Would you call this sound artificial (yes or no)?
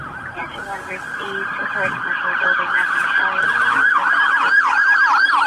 no